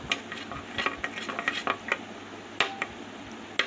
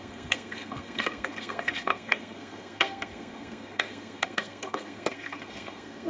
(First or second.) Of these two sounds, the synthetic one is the second